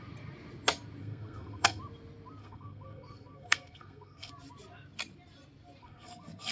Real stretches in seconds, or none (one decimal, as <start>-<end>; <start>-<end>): 0.0-1.0; 1.8-2.4; 4.3-5.8